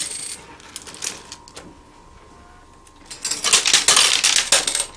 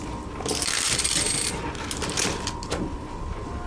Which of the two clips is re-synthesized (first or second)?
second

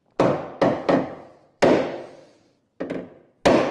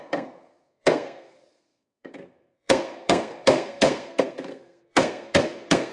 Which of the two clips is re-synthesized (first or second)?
second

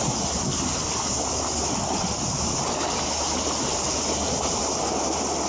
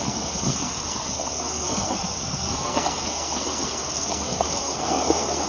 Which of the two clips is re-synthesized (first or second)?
second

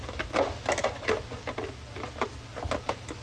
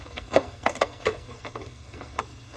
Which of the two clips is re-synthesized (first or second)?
second